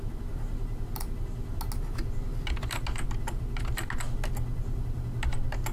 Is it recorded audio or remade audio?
recorded